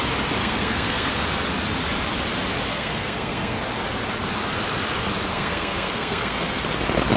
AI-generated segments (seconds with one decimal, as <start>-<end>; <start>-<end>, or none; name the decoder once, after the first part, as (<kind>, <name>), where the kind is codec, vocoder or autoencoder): 0.4-1.1 (codec, SNAC); 2.7-3.6; 5.3-6.6